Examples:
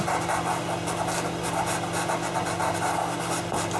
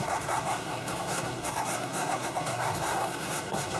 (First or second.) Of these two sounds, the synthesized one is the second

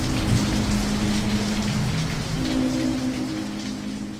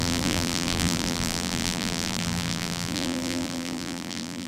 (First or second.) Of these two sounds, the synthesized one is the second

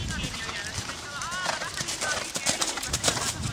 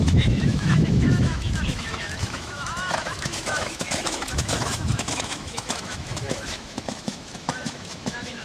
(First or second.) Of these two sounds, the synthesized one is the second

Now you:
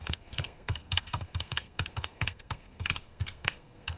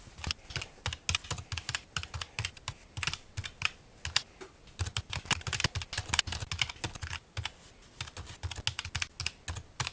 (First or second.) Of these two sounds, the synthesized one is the first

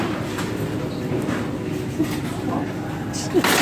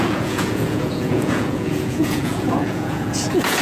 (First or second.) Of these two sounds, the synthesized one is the second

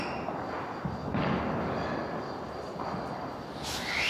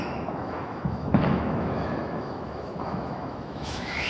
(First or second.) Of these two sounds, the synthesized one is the second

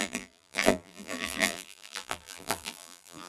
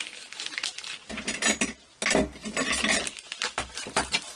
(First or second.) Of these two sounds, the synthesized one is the first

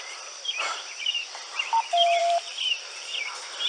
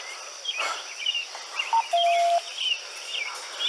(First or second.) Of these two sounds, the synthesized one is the first